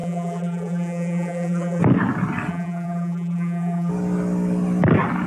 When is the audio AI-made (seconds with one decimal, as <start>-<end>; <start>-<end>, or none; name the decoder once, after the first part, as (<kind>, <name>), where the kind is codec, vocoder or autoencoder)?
0.0-1.8 (vocoder, BigVGAN v2); 2.5-3.9